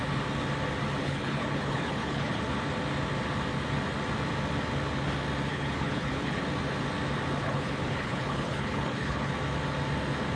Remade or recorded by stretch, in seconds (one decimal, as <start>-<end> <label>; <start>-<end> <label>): 0.0-1.0 recorded; 1.0-2.4 remade; 2.4-5.5 recorded; 5.5-6.4 remade; 6.4-7.4 recorded; 7.4-9.3 remade; 9.3-10.4 recorded

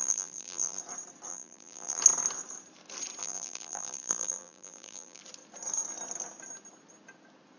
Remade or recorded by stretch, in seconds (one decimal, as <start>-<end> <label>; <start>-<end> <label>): 0.0-0.8 remade; 0.8-1.3 recorded; 1.3-2.0 remade; 2.0-3.2 recorded; 3.2-5.2 remade; 5.2-7.6 recorded

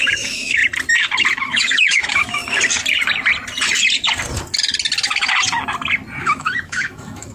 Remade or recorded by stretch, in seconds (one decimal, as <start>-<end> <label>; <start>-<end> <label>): 0.0-0.6 remade; 0.6-1.4 recorded; 1.4-2.4 remade; 2.4-6.2 recorded; 6.2-7.3 remade

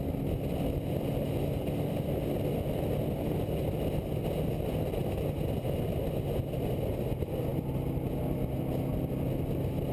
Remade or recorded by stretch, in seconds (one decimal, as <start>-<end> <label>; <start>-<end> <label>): 0.0-9.9 recorded

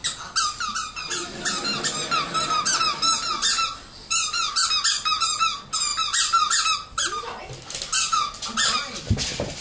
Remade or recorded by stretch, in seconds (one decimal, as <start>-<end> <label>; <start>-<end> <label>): 0.0-9.6 recorded

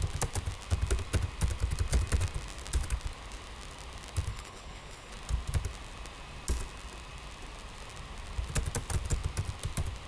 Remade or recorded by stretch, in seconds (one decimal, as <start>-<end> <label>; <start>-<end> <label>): 0.0-4.3 recorded; 4.3-5.1 remade; 5.1-10.1 recorded